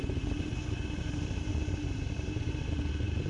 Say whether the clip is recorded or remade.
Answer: recorded